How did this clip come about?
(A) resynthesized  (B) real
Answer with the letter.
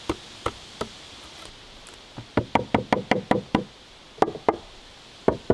B